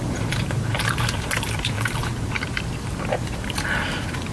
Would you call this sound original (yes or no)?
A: no